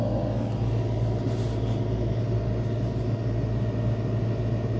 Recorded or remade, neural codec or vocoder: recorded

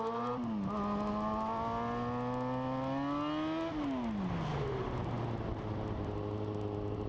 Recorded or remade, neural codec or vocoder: recorded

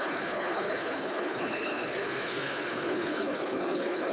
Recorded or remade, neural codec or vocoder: remade, codec, HILCodec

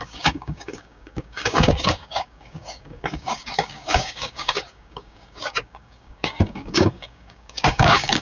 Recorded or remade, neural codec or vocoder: remade, codec, DAC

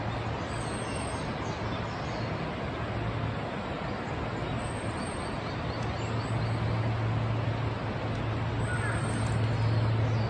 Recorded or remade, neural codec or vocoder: recorded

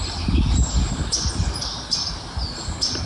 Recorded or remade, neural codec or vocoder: recorded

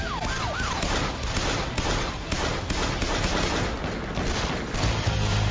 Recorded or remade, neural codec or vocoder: recorded